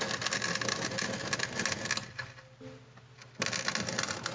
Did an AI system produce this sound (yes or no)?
no